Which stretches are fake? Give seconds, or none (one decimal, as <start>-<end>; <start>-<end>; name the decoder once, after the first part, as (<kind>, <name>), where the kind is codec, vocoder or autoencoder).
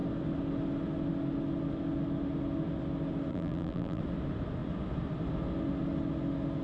3.3-4.0 (vocoder, BigVGAN v2)